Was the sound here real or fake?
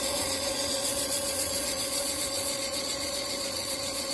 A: fake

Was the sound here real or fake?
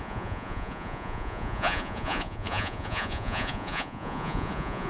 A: fake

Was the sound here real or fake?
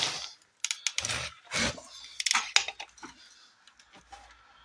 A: real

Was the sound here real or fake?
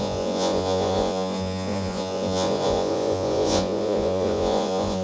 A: fake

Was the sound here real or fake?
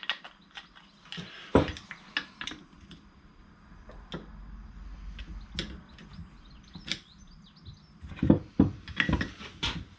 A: real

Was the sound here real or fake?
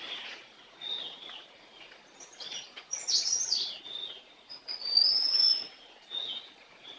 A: fake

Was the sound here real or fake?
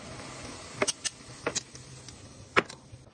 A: real